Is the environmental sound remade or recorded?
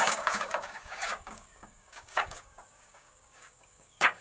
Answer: remade